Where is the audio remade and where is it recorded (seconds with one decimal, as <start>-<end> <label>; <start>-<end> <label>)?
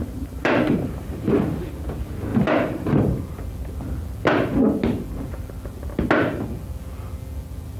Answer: 0.0-1.7 remade; 1.7-2.3 recorded; 2.3-3.2 remade; 3.2-7.8 recorded